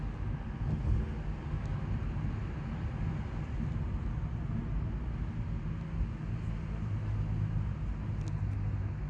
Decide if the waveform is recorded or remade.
recorded